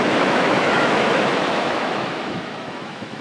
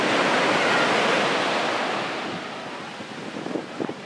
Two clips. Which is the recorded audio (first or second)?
second